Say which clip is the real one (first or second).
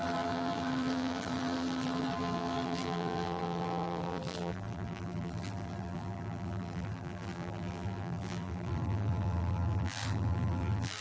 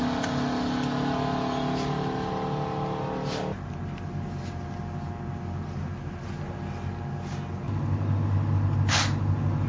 second